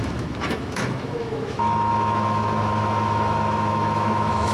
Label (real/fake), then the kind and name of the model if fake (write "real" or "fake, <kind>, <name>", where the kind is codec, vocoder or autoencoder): fake, autoencoder, DAC-VAE